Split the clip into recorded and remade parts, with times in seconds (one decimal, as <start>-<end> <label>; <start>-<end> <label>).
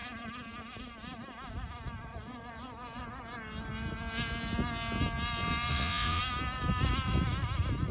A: 0.0-5.7 recorded; 5.7-6.2 remade; 6.2-7.9 recorded